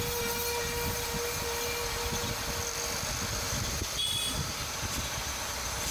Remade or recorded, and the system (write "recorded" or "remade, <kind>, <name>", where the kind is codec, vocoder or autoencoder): recorded